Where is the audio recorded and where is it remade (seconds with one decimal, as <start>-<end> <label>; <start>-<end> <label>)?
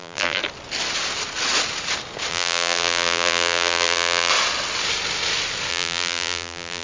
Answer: 0.0-0.4 remade; 0.4-2.3 recorded; 2.3-4.3 remade; 4.3-5.7 recorded; 5.7-6.8 remade